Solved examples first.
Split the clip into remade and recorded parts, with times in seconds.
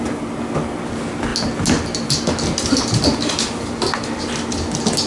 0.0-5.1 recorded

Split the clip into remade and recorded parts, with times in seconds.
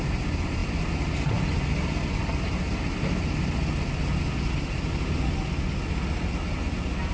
0.0-7.1 recorded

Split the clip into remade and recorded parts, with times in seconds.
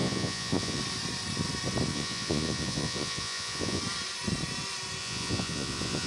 0.0-0.8 remade; 0.8-1.9 recorded; 1.9-3.8 remade; 3.8-5.0 recorded; 5.0-6.1 remade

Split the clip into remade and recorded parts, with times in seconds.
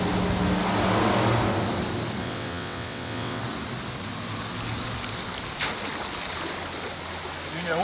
0.0-2.2 recorded; 2.2-3.4 remade; 3.4-7.8 recorded